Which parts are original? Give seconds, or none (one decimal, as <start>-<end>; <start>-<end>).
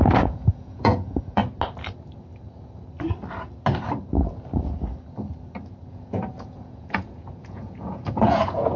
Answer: 1.4-5.9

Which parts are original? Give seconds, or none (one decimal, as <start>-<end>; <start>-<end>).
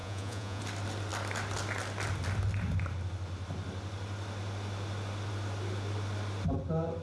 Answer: 0.6-7.0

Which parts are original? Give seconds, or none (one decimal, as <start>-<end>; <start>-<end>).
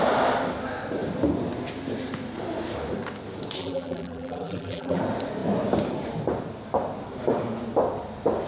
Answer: 0.0-3.6; 5.0-8.5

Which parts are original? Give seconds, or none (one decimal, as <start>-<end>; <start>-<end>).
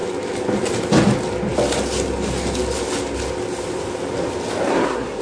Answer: 0.0-4.7